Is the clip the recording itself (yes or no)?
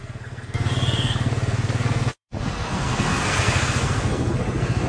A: no